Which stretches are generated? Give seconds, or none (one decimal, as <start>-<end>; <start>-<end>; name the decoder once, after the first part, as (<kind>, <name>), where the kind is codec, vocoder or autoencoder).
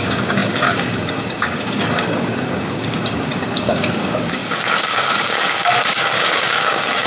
0.0-7.1 (codec, DAC)